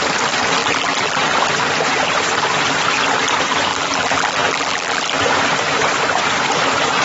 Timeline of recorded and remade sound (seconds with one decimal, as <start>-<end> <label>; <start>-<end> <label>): 0.0-0.6 recorded; 0.6-1.2 remade; 1.2-3.7 recorded; 3.7-5.2 remade; 5.2-7.0 recorded